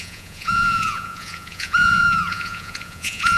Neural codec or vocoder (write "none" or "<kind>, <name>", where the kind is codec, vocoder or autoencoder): vocoder, Vocos